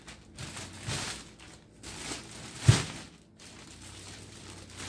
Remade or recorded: recorded